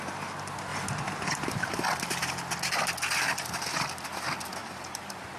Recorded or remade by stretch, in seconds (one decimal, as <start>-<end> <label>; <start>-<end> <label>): 0.0-0.7 recorded; 0.7-1.8 remade; 1.8-4.6 recorded; 4.6-5.4 remade